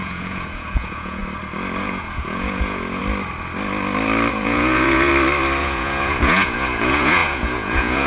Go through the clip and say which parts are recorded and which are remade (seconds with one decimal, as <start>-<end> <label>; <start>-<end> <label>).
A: 0.0-1.2 remade; 1.2-1.8 recorded; 1.8-3.0 remade; 3.0-4.3 recorded; 4.3-5.1 remade; 5.1-5.6 recorded; 5.6-8.1 remade